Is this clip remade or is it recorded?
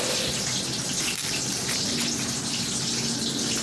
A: recorded